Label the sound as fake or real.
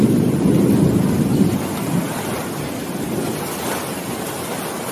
real